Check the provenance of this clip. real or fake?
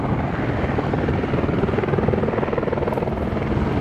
real